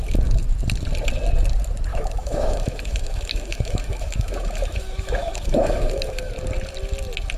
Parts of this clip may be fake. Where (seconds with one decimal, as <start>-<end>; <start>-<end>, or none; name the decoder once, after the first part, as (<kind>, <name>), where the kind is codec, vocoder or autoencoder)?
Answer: 1.9-6.3 (autoencoder, DAC-VAE)